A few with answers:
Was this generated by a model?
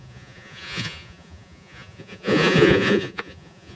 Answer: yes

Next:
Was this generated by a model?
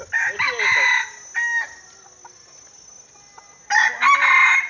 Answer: no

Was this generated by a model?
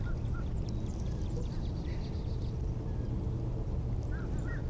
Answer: no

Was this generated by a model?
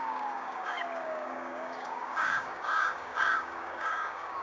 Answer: yes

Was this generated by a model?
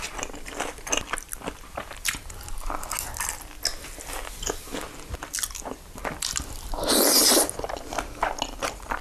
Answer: no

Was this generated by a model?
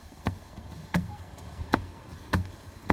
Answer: yes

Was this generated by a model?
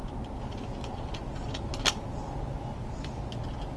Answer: no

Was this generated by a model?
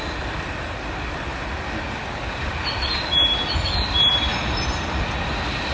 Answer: no